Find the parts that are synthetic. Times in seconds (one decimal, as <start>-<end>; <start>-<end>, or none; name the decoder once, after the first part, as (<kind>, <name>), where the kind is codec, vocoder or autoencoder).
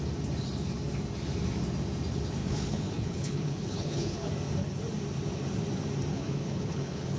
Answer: 2.4-4.3 (codec, HILCodec); 6.1-7.2